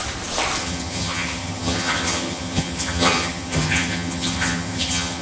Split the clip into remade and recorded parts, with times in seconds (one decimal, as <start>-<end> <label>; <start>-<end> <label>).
0.0-0.6 recorded; 0.6-5.2 remade